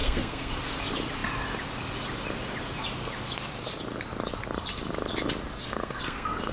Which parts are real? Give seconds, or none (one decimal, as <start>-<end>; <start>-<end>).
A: 0.5-5.6